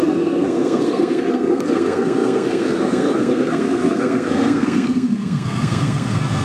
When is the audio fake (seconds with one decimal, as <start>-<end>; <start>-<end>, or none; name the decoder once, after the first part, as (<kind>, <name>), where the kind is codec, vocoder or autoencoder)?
0.0-6.4 (codec, SNAC)